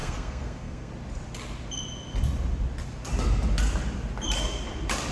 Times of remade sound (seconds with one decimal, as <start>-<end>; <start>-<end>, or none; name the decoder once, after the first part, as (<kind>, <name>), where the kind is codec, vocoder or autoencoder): 0.0-0.9 (codec, SNAC)